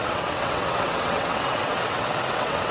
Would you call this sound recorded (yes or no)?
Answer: no